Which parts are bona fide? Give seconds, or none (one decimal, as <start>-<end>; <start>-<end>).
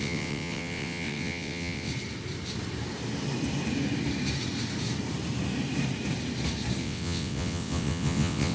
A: 1.9-6.8